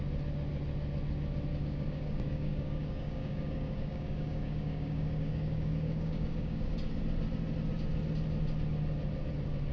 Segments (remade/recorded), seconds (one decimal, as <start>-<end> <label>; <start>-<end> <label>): 0.0-1.5 recorded; 1.5-6.7 remade; 6.7-9.7 recorded

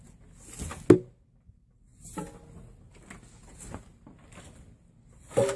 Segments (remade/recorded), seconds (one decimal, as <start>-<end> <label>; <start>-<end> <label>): 0.0-5.6 recorded

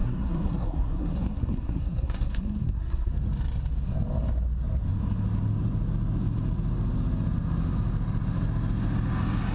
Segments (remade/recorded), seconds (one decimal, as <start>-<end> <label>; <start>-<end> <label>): 0.0-3.1 remade; 3.1-9.5 recorded

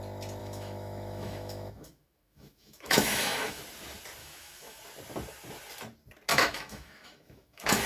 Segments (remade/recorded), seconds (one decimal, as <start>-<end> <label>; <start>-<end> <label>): 0.0-0.4 recorded; 0.4-3.6 remade; 3.6-4.2 recorded; 4.2-4.8 remade; 4.8-6.3 recorded; 6.3-7.9 remade

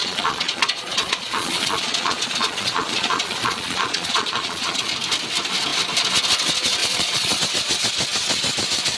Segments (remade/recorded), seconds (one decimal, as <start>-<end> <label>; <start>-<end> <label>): 0.0-4.9 remade; 4.9-6.8 recorded; 6.8-7.4 remade; 7.4-9.0 recorded

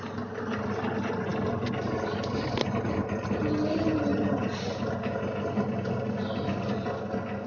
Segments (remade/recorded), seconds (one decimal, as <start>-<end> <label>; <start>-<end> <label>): 0.0-7.5 recorded

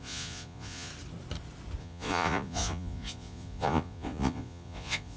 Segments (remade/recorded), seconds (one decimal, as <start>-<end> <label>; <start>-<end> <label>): 0.0-0.9 remade; 0.9-1.8 recorded; 1.8-5.2 remade